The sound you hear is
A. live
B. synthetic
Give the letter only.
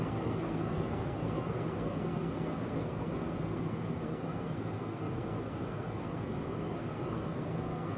B